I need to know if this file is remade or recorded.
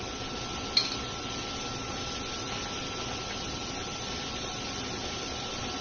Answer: recorded